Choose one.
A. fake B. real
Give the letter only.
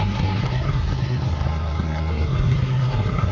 A